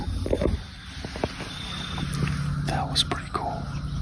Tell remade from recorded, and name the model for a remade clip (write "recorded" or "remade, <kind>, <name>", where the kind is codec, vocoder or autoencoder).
recorded